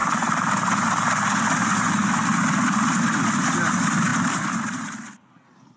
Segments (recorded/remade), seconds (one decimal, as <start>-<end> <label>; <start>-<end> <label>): 0.0-5.8 recorded